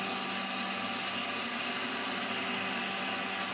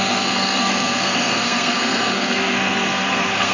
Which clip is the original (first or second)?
first